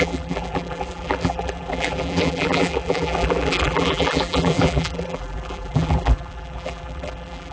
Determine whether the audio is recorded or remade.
remade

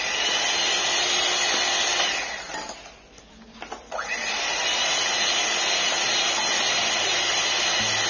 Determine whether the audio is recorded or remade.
recorded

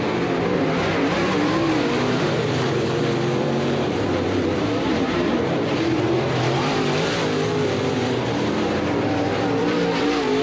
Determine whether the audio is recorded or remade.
remade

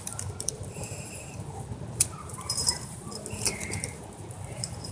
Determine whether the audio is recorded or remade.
remade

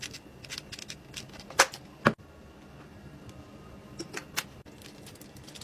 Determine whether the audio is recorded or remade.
recorded